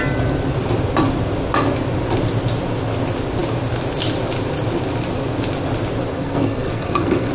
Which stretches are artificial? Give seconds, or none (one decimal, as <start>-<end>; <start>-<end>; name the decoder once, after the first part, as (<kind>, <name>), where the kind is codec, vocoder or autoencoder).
6.1-7.3 (codec, SNAC)